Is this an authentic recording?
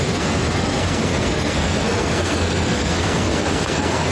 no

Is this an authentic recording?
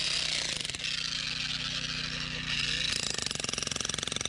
yes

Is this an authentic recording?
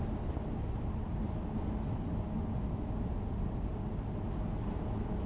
yes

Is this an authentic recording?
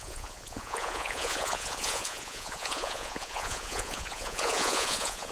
no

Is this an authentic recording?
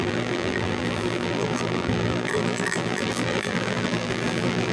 no